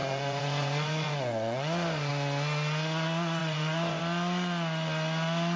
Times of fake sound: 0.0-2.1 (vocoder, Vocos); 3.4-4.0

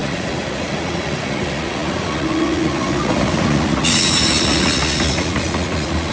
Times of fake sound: 0.0-6.1 (vocoder, Vocos)